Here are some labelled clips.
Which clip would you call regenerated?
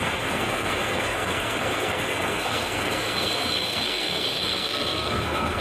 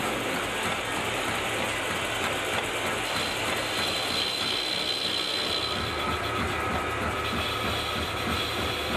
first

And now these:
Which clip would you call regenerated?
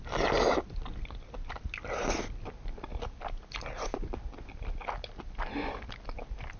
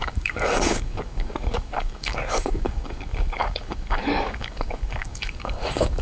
second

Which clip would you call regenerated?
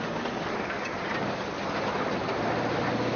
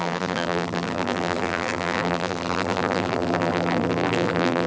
second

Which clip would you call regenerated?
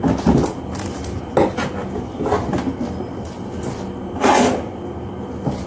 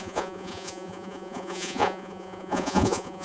second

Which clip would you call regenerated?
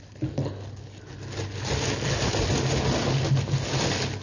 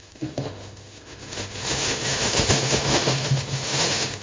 second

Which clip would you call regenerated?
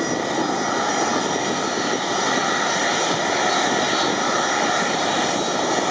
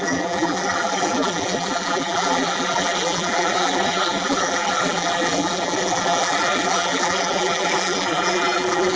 second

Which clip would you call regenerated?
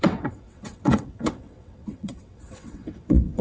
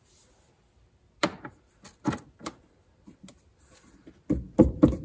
first